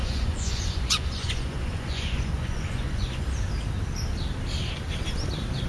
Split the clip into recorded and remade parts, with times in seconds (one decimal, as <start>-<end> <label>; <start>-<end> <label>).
0.0-3.2 remade; 3.2-5.7 recorded